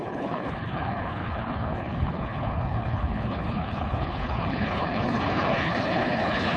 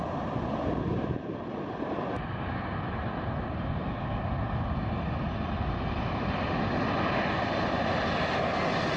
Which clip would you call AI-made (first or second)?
first